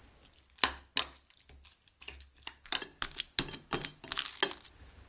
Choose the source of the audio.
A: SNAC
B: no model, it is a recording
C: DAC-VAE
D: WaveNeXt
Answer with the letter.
B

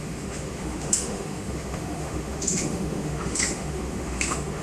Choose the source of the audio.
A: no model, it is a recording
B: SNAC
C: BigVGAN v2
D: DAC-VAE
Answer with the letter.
D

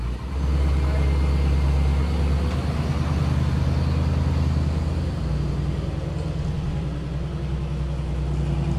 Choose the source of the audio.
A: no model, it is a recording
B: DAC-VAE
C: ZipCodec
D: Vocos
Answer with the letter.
A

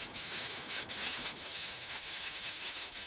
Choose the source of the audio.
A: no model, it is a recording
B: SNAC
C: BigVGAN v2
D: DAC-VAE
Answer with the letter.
D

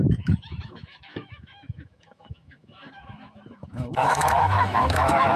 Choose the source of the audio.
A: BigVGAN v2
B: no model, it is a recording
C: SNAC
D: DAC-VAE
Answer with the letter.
D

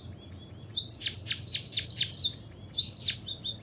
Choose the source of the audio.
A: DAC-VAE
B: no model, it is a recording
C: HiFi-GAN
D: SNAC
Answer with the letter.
B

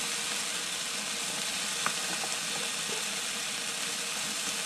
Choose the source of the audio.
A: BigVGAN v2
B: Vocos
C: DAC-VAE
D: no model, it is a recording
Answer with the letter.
D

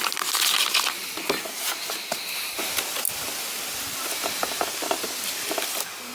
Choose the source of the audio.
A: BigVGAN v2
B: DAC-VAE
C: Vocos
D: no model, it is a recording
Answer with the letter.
D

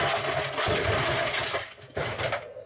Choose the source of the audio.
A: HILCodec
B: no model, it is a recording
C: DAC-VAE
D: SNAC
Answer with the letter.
B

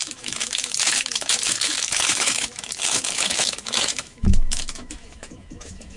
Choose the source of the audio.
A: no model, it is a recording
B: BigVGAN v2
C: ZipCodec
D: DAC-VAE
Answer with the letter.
D